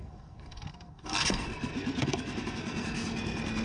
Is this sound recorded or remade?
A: remade